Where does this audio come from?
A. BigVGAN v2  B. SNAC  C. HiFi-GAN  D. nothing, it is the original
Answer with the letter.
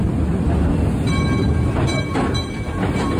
D